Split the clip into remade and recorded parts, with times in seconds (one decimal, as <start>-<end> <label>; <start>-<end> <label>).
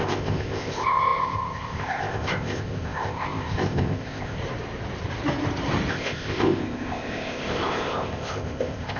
0.0-4.4 remade; 4.4-5.9 recorded; 5.9-9.0 remade